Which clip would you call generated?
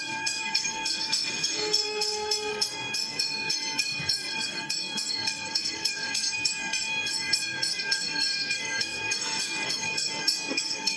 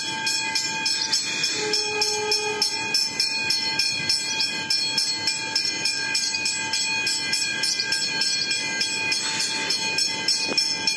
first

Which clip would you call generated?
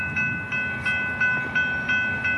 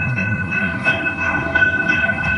second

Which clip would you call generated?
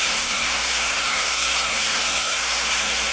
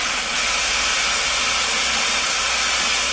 first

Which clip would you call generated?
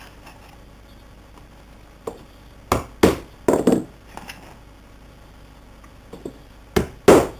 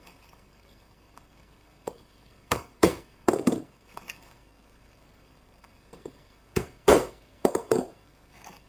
second